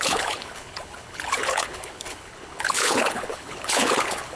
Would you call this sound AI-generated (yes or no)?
yes